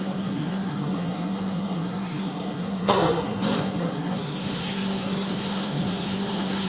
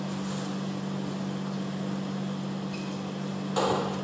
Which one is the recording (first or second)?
second